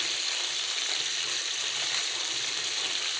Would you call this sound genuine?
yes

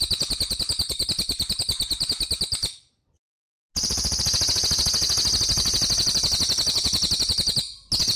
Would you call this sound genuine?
yes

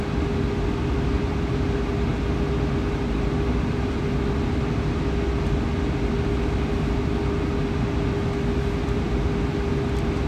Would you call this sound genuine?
yes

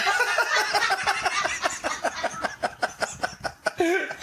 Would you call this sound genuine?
yes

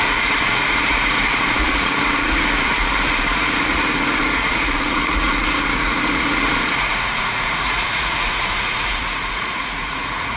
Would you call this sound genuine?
no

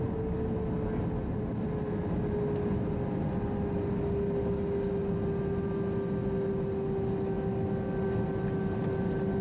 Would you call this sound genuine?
yes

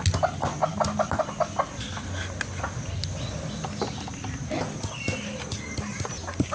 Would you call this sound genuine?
yes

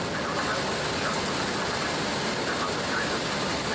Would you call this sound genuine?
yes